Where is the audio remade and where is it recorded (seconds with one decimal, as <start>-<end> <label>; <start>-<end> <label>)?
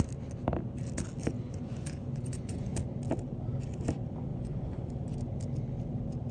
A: 0.0-1.2 recorded; 1.2-2.7 remade; 2.7-4.3 recorded; 4.3-4.9 remade; 4.9-6.3 recorded